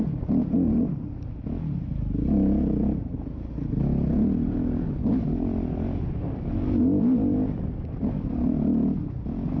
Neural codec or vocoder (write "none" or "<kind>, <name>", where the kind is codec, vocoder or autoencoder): none